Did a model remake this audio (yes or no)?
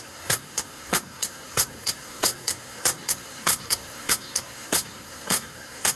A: yes